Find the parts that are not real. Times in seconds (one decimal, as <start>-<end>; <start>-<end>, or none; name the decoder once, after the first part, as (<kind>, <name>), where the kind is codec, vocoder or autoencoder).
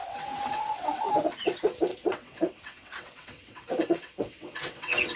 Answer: 0.0-1.1 (vocoder, WaveNeXt); 1.9-5.2